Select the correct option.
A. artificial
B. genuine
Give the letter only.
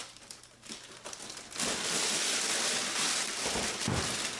B